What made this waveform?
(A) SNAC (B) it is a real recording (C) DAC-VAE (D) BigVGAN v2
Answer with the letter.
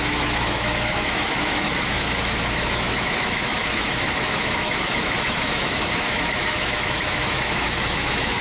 C